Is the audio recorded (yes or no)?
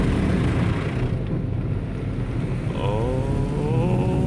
yes